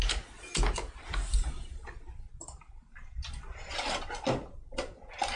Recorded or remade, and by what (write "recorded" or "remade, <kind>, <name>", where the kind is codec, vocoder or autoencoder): recorded